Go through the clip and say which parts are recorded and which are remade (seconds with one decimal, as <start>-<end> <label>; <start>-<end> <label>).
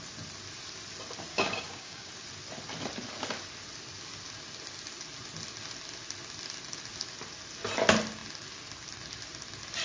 0.0-1.3 recorded; 1.3-2.1 remade; 2.1-9.8 recorded